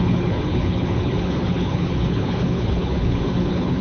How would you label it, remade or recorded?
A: remade